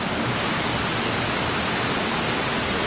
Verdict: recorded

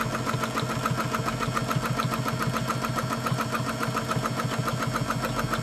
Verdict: recorded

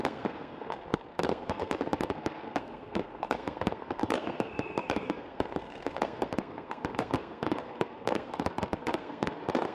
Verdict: remade